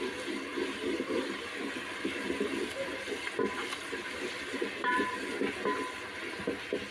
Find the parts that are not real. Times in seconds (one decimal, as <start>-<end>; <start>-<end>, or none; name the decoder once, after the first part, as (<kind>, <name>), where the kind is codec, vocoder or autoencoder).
none